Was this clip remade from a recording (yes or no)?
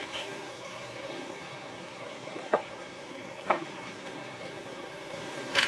yes